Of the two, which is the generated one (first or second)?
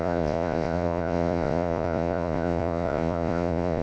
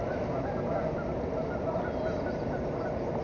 first